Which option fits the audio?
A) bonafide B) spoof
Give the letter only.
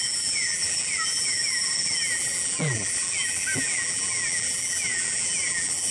B